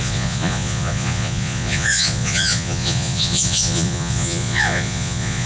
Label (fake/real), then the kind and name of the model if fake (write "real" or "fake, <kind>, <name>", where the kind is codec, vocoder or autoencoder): fake, vocoder, Vocos